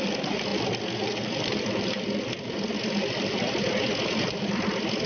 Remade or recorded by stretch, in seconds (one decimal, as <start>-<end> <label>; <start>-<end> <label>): 0.0-5.1 recorded